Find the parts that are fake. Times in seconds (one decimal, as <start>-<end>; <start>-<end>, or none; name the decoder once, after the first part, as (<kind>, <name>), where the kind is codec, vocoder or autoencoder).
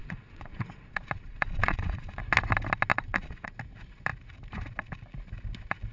0.0-2.2 (vocoder, Vocos); 2.9-3.6